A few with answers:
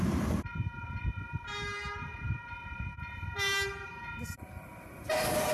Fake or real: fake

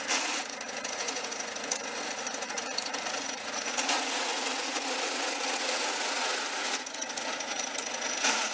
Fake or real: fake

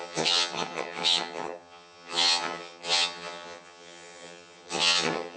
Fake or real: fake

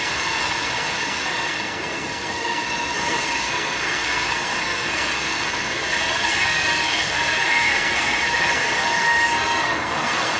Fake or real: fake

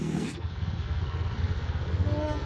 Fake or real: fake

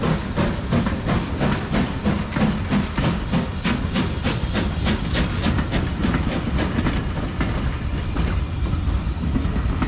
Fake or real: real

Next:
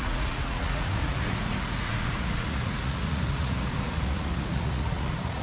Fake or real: fake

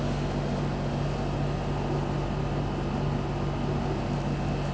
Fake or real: real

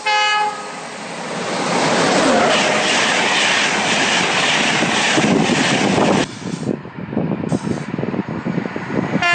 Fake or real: real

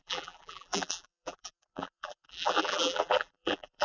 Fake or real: fake